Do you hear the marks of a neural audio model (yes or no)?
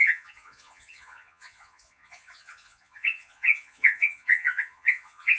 yes